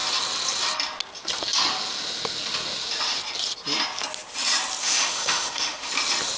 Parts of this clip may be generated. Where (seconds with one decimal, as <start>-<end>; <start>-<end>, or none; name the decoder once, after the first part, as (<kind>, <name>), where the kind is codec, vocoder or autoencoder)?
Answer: 4.8-5.9 (autoencoder, DAC-VAE)